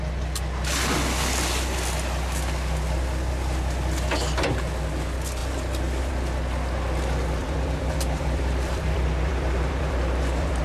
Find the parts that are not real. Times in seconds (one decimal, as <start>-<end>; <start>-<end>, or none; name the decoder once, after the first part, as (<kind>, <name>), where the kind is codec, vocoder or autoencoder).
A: 7.4-10.6 (vocoder, BigVGAN v2)